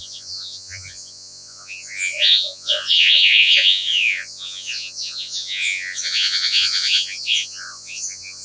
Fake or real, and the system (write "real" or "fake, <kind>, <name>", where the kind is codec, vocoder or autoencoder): fake, vocoder, Vocos